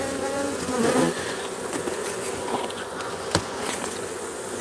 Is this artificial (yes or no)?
yes